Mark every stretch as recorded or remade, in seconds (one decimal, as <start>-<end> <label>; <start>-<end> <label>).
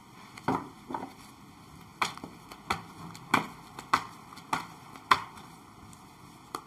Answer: 0.0-6.7 recorded